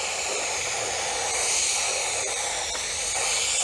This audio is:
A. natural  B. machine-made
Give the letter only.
B